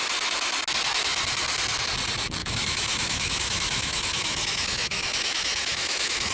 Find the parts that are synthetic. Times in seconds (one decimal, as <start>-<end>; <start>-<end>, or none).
2.4-6.3